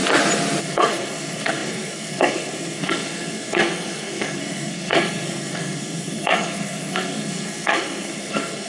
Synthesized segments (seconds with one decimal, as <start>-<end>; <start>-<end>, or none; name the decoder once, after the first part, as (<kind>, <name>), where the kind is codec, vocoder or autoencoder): 0.6-8.7 (codec, SNAC)